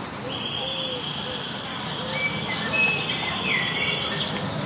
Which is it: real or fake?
real